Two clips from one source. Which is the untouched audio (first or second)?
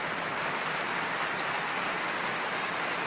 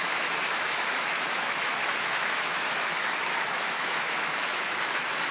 first